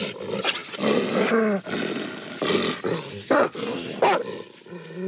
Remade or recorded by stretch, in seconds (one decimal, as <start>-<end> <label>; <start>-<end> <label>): 0.0-3.1 recorded; 3.1-4.0 remade; 4.0-5.1 recorded